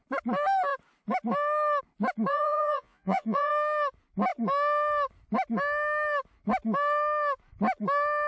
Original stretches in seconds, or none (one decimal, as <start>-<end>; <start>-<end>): 0.0-2.3; 3.5-8.3